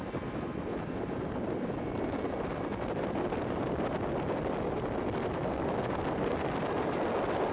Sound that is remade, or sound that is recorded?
recorded